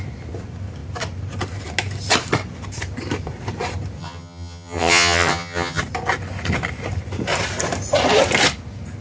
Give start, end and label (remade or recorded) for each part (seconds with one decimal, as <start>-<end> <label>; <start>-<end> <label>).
0.0-4.0 recorded; 4.0-5.8 remade; 5.8-9.0 recorded